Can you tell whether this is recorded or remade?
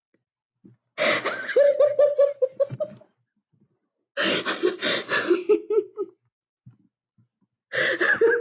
recorded